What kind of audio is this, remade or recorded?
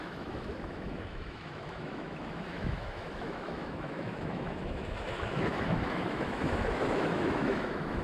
remade